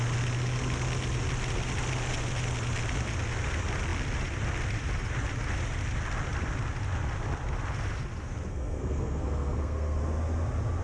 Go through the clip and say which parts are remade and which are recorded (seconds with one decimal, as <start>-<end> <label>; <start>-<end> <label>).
0.0-8.5 recorded; 8.5-10.0 remade; 10.0-10.8 recorded

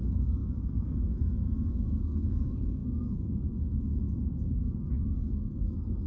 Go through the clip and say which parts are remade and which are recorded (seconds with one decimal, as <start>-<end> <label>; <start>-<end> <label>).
0.0-6.1 remade

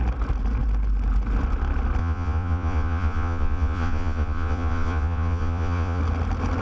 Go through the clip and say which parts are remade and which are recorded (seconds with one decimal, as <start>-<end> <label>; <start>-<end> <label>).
0.0-2.0 recorded; 2.0-6.0 remade; 6.0-6.6 recorded

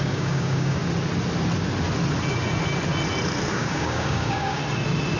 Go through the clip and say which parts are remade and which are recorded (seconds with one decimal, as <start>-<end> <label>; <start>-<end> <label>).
0.0-0.8 remade; 0.8-3.5 recorded; 3.5-4.6 remade; 4.6-5.2 recorded

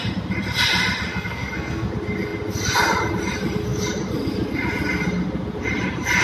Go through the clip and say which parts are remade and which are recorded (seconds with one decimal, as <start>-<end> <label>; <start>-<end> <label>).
0.0-1.1 recorded; 1.1-1.9 remade; 1.9-6.2 recorded

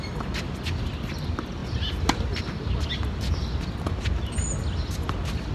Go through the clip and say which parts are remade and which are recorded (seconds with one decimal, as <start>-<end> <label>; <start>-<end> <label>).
0.0-5.5 recorded